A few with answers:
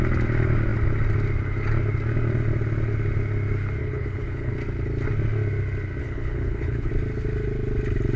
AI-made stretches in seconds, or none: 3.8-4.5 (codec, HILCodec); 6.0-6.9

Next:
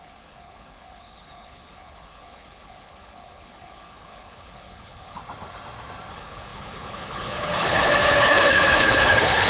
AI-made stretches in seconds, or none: 0.0-5.2 (codec, HILCodec); 6.1-9.5

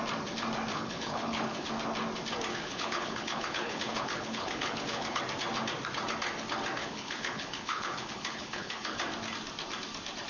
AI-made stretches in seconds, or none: 0.7-1.7 (codec, HILCodec); 2.5-5.2; 6.8-9.0

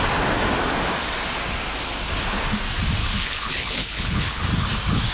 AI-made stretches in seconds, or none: 3.0-4.4 (codec, HILCodec)

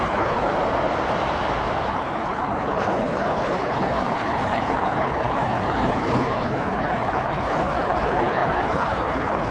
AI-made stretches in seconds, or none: 0.0-0.5 (codec, HILCodec); 1.9-9.5

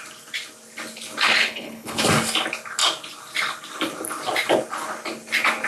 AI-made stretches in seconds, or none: 1.4-2.0 (codec, HILCodec)